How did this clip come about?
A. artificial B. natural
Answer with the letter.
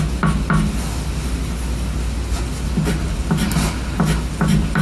B